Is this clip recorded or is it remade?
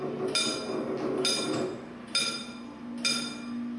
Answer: recorded